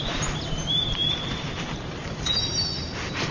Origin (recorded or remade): remade